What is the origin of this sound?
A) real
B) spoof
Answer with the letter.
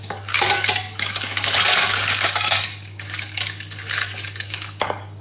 B